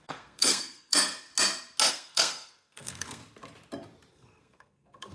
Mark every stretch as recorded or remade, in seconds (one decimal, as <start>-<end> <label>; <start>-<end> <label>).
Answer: 0.0-1.3 remade; 1.3-1.9 recorded; 1.9-3.2 remade; 3.2-4.1 recorded; 4.1-5.1 remade